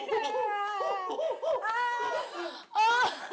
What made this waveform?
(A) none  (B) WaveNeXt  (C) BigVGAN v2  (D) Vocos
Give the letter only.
A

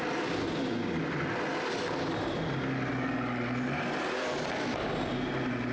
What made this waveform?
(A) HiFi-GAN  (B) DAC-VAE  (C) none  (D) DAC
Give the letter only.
C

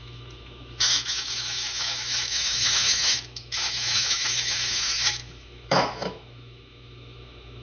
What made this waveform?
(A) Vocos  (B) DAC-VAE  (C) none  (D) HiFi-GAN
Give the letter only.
B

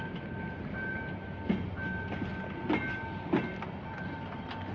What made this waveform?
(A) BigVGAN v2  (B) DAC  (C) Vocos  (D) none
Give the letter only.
D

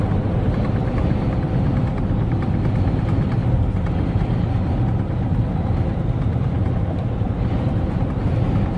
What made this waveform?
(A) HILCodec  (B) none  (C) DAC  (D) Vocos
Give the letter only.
B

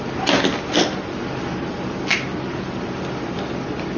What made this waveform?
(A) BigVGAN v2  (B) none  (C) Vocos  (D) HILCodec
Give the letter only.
B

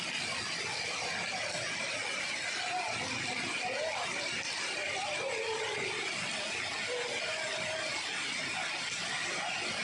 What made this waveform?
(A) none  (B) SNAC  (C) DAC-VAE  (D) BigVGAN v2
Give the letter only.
A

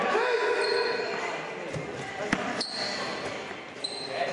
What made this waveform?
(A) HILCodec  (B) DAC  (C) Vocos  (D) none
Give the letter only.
D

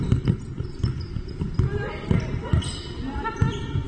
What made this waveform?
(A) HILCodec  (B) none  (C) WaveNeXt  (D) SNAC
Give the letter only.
B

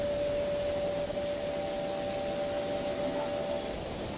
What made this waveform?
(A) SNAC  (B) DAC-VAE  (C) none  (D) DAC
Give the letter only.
C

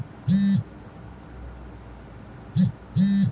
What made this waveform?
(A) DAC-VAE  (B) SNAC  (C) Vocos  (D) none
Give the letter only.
D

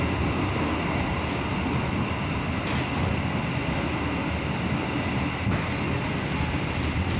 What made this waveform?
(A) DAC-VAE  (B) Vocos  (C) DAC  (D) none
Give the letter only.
D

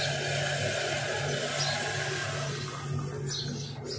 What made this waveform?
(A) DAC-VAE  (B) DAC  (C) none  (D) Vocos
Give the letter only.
C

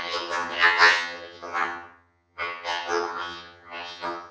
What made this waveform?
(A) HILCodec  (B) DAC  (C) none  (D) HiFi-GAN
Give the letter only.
D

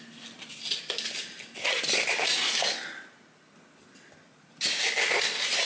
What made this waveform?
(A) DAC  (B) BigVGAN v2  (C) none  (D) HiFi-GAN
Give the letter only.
C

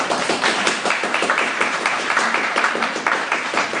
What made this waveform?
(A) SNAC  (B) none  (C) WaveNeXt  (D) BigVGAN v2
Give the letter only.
D